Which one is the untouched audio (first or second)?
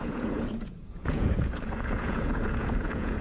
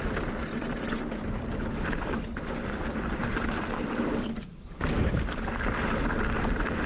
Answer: second